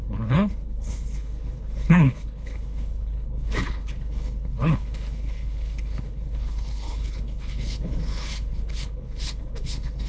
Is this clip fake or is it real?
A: fake